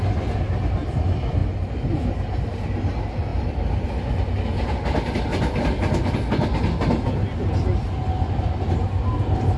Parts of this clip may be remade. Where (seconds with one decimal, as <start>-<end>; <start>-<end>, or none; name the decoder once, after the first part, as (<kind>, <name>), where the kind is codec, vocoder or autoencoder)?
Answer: none